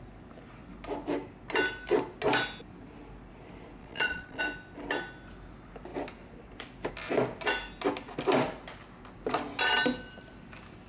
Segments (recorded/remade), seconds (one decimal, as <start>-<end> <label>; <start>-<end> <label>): 0.0-3.8 recorded; 3.8-4.4 remade; 4.4-10.9 recorded